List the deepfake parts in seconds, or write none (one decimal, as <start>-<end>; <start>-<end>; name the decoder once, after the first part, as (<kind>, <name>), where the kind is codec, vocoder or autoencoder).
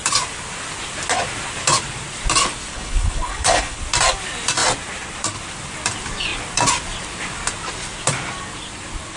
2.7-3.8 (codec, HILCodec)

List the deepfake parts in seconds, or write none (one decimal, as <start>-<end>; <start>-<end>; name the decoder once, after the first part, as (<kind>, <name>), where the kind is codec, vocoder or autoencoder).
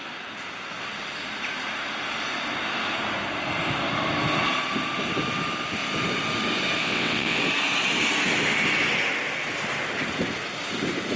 6.8-7.4 (vocoder, WaveNeXt)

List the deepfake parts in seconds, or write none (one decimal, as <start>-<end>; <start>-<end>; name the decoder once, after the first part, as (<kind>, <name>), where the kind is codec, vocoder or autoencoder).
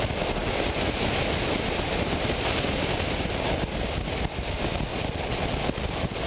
4.9-5.7 (vocoder, BigVGAN v2)